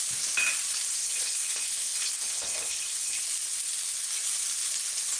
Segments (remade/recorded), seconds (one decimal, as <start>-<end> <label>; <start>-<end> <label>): 0.0-1.0 recorded; 1.0-3.2 remade; 3.2-5.2 recorded